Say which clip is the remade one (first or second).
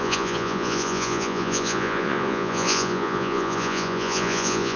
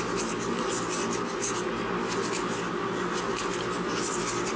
first